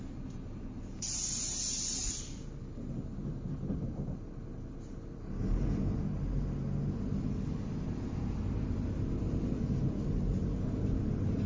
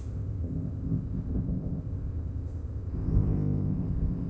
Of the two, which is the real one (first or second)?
first